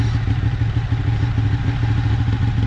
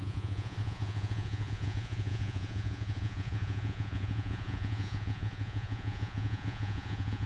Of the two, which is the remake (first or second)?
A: second